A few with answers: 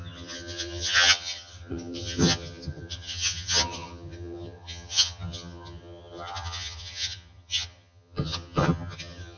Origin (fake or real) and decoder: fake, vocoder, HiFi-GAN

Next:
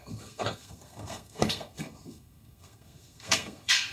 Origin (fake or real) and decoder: fake, codec, SNAC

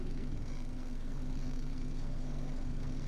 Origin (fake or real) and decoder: fake, codec, SNAC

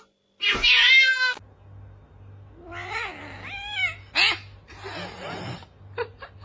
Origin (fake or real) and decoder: real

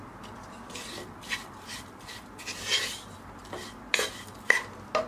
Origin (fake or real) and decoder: real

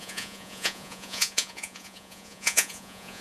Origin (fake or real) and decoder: fake, vocoder, Vocos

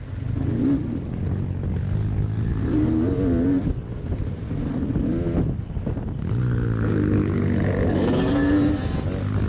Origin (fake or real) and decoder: real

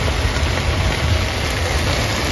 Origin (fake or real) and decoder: real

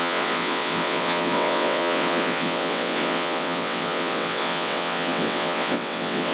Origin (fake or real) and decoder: fake, vocoder, WaveNeXt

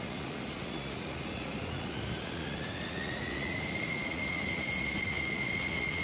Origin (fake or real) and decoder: fake, vocoder, Vocos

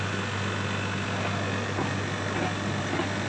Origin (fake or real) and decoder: real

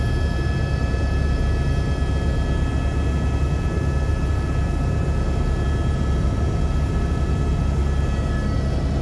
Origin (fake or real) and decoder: real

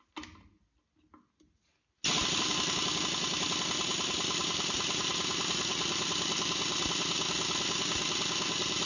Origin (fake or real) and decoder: real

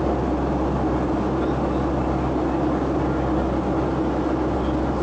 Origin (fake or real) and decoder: real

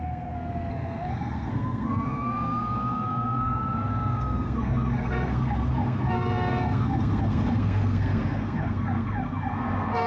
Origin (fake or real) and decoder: fake, codec, SNAC